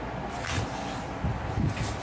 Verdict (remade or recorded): recorded